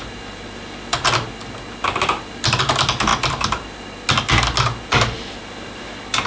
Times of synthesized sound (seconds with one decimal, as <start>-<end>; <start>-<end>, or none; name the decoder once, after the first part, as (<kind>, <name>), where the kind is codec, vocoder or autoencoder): none